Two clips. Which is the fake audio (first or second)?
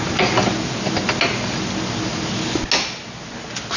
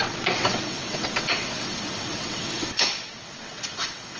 second